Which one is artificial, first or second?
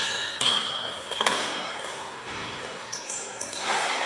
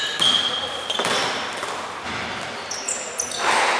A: first